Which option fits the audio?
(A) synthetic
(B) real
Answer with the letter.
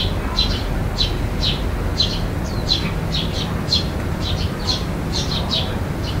B